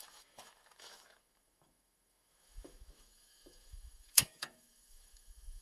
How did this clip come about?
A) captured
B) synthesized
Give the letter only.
B